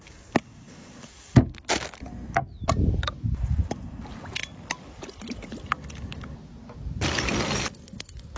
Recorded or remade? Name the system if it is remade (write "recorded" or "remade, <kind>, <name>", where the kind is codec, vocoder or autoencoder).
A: recorded